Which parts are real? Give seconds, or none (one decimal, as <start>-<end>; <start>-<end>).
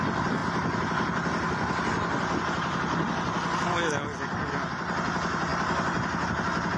0.0-6.8